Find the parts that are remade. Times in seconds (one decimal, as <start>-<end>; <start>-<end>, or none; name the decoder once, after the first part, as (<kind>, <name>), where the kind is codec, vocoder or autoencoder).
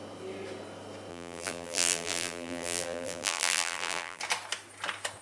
1.1-4.2 (vocoder, BigVGAN v2)